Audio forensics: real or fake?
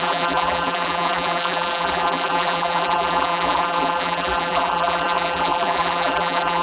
fake